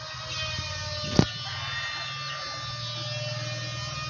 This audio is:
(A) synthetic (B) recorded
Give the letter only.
B